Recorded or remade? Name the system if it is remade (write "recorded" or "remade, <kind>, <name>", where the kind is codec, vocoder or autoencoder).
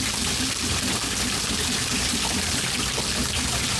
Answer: recorded